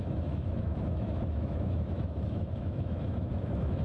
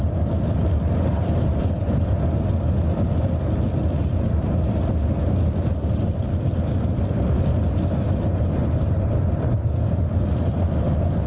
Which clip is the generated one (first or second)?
first